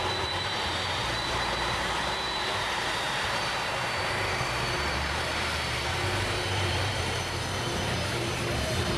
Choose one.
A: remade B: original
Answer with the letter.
A